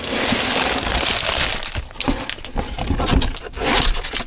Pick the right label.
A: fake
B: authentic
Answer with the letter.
B